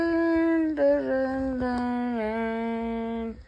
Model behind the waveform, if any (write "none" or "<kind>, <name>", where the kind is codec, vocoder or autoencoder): none